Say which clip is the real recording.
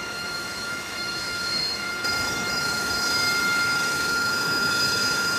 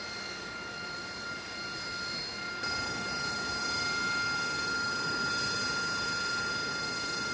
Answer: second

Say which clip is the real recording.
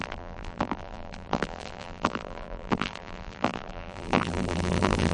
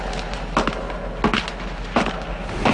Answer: second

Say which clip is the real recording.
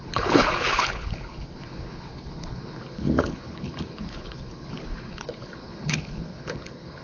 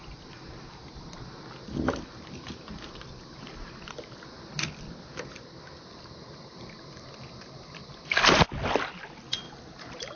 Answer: second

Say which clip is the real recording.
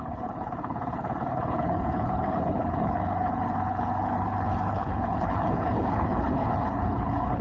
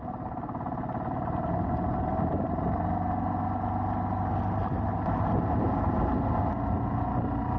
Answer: second